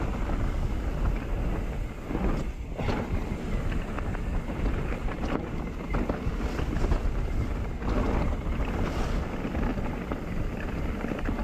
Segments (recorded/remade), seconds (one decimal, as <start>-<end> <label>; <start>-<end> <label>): 0.0-9.7 recorded; 9.7-11.4 remade